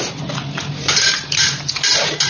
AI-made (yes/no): no